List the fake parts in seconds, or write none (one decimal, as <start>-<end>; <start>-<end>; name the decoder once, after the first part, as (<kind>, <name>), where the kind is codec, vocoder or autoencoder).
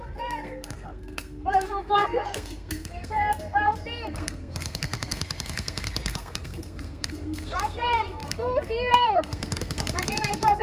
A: 0.0-10.6 (codec, SNAC)